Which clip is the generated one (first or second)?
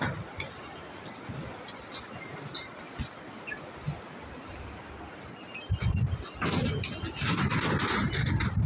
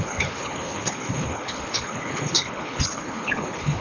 second